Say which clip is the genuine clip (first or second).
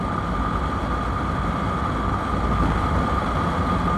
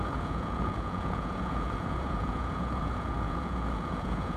first